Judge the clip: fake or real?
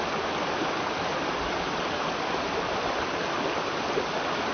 real